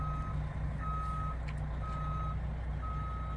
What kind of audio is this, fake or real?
real